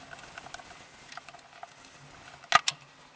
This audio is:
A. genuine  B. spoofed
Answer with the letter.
A